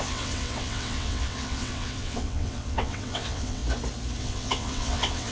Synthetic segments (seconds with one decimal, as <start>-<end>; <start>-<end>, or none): 0.0-3.6; 4.2-5.3